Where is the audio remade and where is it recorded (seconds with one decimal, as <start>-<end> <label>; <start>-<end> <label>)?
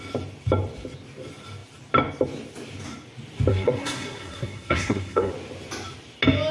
0.0-3.5 recorded; 3.5-5.3 remade; 5.3-6.5 recorded